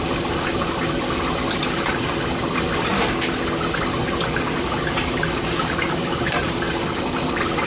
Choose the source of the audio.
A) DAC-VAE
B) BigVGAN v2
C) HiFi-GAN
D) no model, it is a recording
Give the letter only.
D